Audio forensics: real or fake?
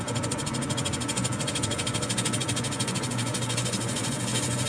fake